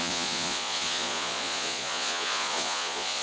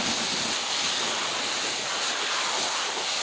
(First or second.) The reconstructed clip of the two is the first